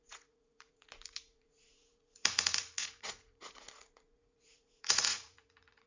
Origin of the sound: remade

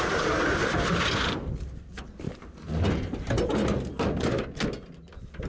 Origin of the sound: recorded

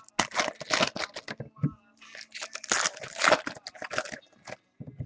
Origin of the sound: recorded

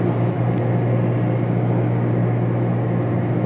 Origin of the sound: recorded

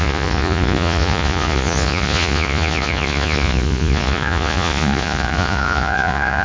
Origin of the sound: remade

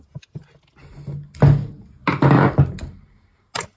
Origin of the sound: recorded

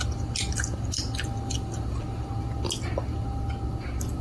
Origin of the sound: recorded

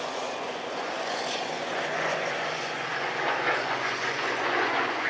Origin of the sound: remade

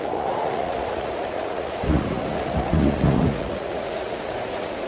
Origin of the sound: remade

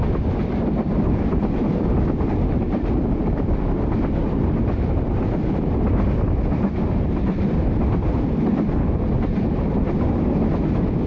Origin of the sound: recorded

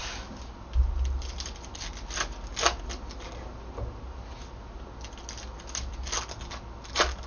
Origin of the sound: recorded